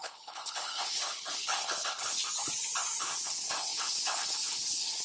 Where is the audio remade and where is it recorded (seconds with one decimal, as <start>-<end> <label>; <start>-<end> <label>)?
0.0-2.3 remade; 2.3-3.0 recorded; 3.0-5.0 remade